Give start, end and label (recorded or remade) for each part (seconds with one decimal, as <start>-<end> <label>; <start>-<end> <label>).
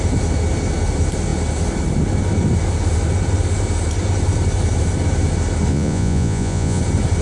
0.0-5.7 recorded; 5.7-6.8 remade; 6.8-7.2 recorded